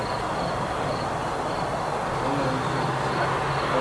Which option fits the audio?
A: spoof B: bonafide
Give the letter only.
B